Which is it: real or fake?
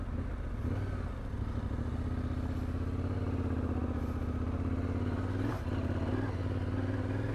real